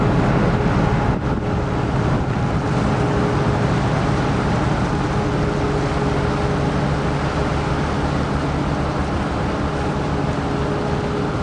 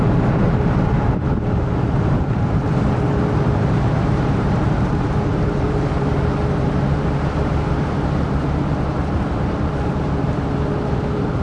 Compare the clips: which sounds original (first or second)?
first